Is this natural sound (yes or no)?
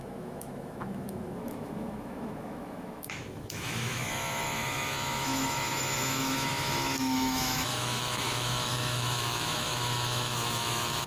no